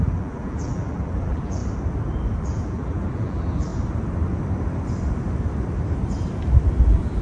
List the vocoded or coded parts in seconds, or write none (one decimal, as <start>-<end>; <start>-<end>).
0.0-1.6; 2.4-3.7; 6.8-7.2